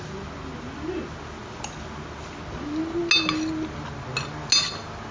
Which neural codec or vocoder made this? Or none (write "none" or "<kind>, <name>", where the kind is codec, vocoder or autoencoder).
none